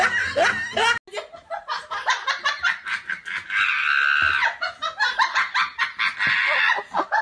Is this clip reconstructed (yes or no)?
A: no